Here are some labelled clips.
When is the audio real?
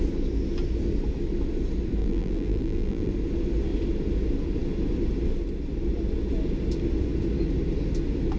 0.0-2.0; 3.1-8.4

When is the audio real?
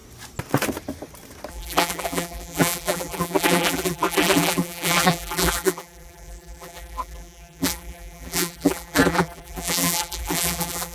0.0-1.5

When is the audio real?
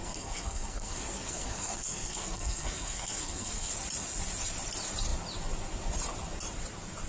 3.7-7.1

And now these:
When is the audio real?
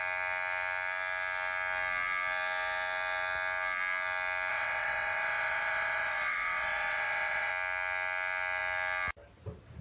0.0-4.5; 7.5-9.8